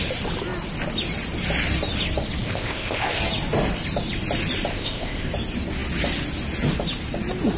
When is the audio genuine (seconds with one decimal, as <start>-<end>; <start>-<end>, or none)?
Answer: 0.0-2.4; 3.2-4.7; 5.3-7.6